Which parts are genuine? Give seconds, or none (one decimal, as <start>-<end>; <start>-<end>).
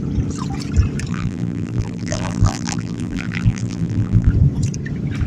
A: 0.0-1.1; 4.3-5.3